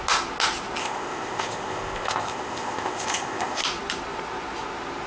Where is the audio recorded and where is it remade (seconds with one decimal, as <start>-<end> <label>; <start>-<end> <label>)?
0.0-0.8 recorded; 0.8-3.6 remade; 3.6-5.1 recorded